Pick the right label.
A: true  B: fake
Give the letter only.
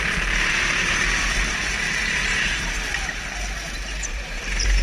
B